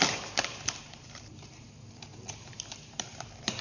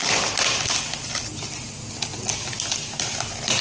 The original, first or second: second